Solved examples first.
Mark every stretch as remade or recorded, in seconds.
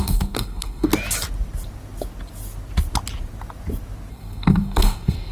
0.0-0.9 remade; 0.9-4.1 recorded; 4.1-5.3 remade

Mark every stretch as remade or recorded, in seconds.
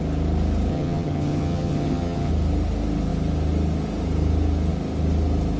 0.0-0.7 recorded; 0.7-2.3 remade; 2.3-5.6 recorded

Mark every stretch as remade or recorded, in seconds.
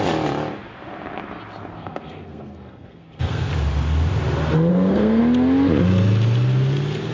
0.0-1.7 recorded; 1.7-3.5 remade; 3.5-4.7 recorded; 4.7-5.2 remade; 5.2-7.1 recorded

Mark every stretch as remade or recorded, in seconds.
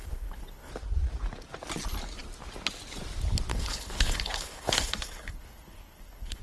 0.0-0.7 remade; 0.7-3.5 recorded; 3.5-6.4 remade